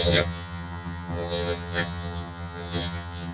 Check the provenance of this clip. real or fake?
fake